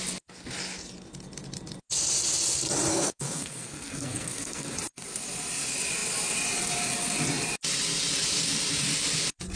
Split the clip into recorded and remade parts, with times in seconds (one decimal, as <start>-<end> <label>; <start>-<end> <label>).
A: 0.0-2.9 recorded; 2.9-4.7 remade; 4.7-9.6 recorded